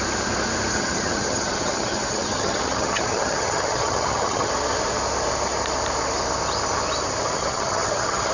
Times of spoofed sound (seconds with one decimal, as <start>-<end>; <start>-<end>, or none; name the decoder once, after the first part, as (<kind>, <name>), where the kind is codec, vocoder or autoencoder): 0.7-4.5 (vocoder, HiFi-GAN); 7.4-8.3